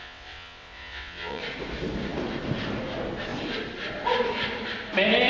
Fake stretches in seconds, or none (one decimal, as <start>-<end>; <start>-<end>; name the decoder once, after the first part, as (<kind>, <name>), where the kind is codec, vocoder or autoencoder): 0.0-1.4 (vocoder, WaveNeXt)